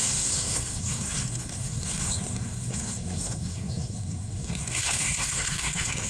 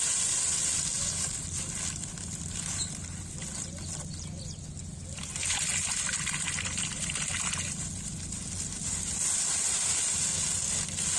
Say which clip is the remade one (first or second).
first